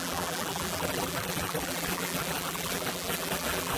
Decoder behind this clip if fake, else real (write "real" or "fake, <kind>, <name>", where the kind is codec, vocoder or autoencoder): fake, vocoder, BigVGAN v2